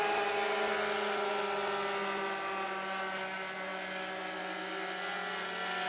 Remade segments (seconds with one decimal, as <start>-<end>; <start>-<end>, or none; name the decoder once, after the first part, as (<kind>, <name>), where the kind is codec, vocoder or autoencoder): none